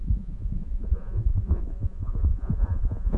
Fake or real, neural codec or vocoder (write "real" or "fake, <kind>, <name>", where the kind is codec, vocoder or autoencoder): fake, vocoder, Vocos